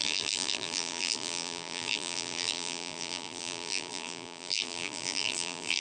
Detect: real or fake fake